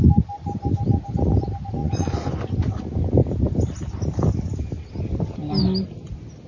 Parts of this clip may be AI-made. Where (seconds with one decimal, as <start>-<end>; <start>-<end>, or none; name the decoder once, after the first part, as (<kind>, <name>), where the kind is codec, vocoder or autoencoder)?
1.8-2.3 (vocoder, Vocos)